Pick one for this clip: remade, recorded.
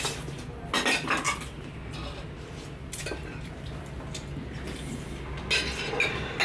recorded